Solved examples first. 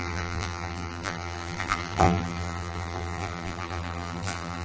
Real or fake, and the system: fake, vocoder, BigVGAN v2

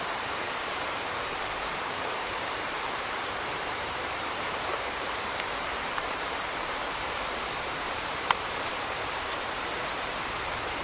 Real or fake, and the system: fake, vocoder, BigVGAN v2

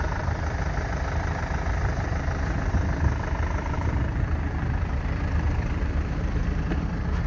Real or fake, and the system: fake, vocoder, BigVGAN v2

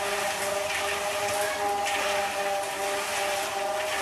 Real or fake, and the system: real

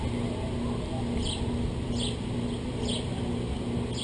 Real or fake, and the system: real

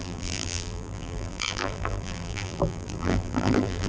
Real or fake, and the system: fake, vocoder, BigVGAN v2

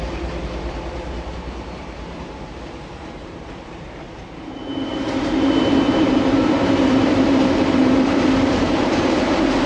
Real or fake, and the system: fake, vocoder, BigVGAN v2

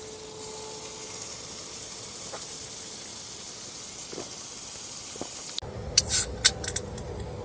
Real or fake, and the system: real